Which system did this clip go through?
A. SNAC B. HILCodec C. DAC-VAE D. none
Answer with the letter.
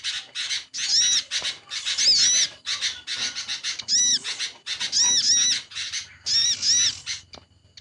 D